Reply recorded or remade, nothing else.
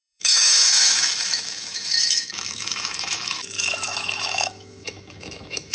remade